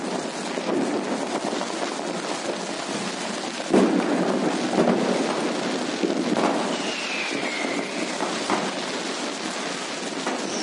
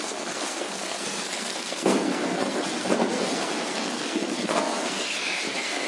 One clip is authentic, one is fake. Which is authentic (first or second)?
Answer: first